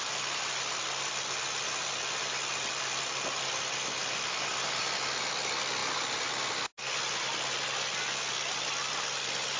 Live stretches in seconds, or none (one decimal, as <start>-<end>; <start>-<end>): 0.0-9.6